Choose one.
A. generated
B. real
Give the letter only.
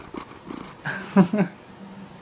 B